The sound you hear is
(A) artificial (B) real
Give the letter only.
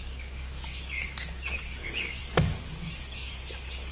A